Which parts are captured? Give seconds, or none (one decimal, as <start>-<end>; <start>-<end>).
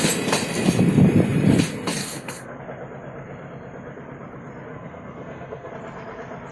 0.0-2.0; 2.6-4.7; 5.7-6.5